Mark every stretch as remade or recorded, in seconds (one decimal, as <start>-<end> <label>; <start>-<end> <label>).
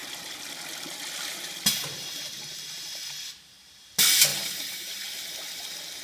0.0-4.3 recorded; 4.3-5.1 remade; 5.1-6.0 recorded